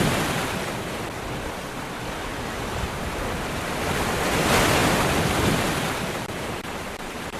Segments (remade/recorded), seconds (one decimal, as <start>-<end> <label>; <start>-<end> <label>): 0.0-2.3 recorded; 2.3-3.0 remade; 3.0-4.8 recorded; 4.8-7.0 remade; 7.0-7.4 recorded